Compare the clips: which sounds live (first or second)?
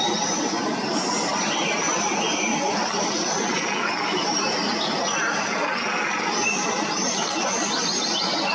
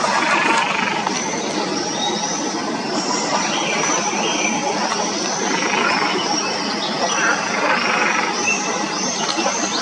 first